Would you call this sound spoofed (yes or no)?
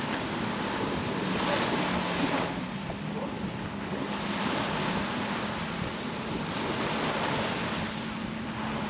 no